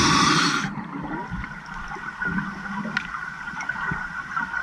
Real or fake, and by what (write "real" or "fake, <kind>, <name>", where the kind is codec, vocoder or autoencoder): real